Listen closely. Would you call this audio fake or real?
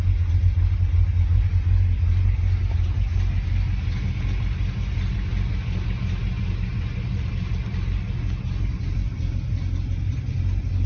real